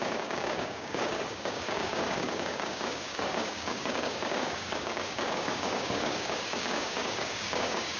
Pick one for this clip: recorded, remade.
remade